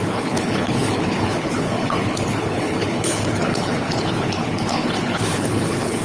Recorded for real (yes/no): no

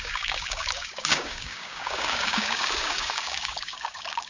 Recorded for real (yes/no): no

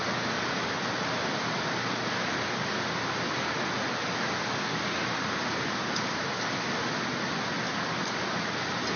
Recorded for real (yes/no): yes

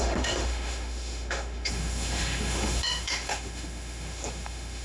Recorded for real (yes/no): no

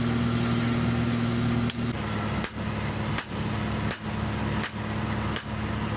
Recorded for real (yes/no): yes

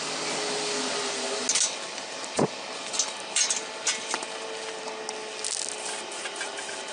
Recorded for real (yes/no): yes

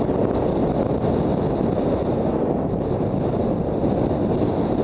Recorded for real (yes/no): yes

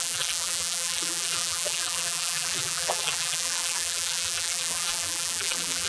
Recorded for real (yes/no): no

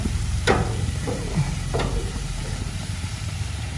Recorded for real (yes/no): no